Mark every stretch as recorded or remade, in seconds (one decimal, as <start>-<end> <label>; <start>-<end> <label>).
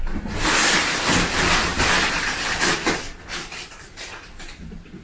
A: 0.0-5.0 recorded